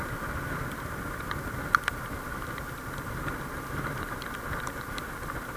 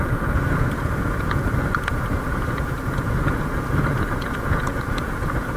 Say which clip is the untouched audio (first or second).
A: first